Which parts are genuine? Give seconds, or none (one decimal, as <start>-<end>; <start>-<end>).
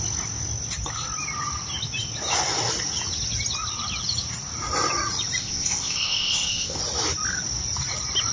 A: 0.0-5.4; 6.8-8.3